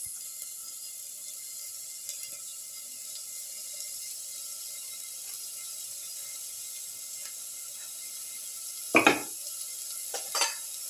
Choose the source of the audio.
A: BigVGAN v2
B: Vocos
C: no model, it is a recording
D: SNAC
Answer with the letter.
C